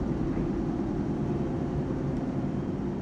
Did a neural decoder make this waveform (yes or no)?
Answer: no